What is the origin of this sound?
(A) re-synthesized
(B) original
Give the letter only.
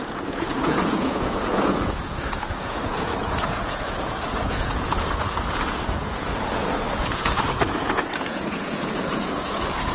A